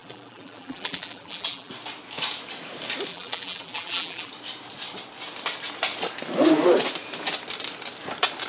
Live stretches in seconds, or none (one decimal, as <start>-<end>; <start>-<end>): 1.7-3.1; 4.3-8.5